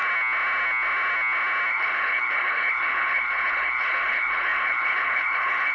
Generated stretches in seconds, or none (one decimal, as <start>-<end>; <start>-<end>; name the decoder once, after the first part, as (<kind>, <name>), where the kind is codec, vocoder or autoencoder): 1.7-5.7 (codec, HILCodec)